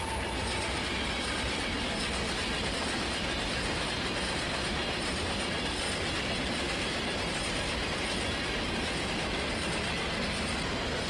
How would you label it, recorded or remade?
recorded